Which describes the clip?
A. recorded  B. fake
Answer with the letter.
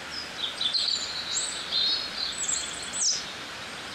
A